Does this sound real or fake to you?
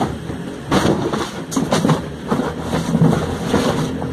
real